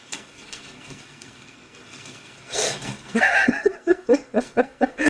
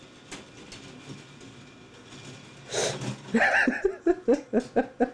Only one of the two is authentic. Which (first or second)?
second